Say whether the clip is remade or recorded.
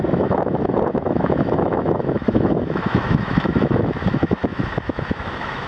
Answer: remade